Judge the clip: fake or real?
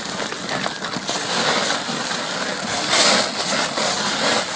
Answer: real